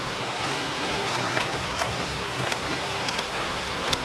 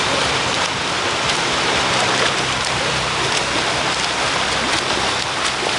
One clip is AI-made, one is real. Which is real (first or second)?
second